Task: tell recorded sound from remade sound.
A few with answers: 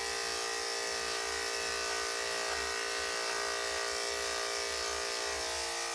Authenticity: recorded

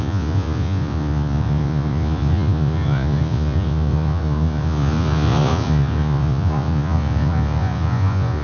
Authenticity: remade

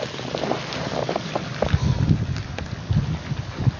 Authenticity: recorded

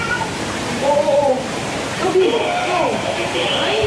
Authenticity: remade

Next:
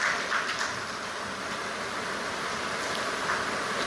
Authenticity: recorded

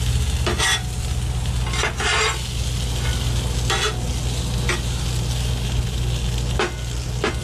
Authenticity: recorded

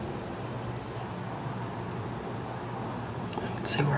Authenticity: recorded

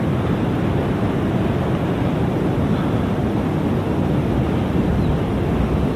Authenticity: remade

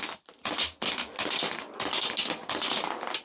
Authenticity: recorded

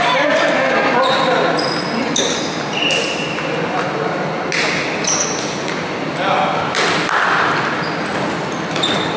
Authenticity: recorded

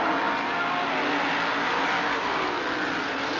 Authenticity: recorded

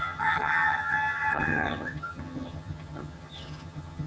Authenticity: remade